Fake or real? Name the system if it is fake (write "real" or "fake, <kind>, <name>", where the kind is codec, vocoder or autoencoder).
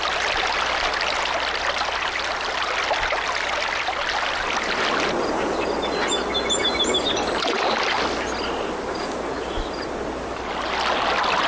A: real